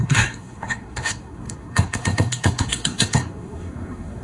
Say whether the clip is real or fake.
fake